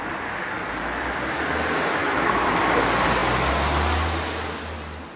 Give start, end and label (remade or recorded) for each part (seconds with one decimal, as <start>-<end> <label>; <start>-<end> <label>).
0.0-2.0 recorded; 2.0-2.5 remade; 2.5-5.2 recorded